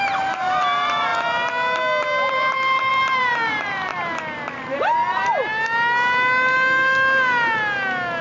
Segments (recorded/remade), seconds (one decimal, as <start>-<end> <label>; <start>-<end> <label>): 0.0-1.1 remade; 1.1-2.3 recorded; 2.3-3.9 remade; 3.9-4.6 recorded; 4.6-5.5 remade; 5.5-8.2 recorded